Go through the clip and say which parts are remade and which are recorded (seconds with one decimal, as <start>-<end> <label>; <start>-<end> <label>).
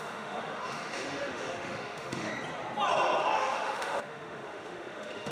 0.0-2.3 remade; 2.3-3.2 recorded; 3.2-5.3 remade